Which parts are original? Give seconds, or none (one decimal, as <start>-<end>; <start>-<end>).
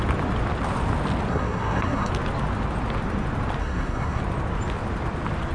0.0-1.3; 2.1-3.6; 4.2-5.5